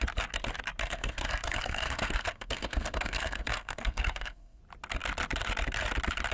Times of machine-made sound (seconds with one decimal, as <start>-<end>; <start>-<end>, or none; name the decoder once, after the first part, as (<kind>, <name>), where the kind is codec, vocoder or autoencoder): 0.8-4.6 (codec, SNAC)